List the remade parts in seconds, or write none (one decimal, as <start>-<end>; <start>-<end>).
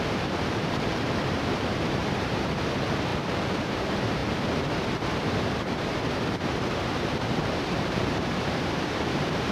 0.0-0.9; 1.8-9.5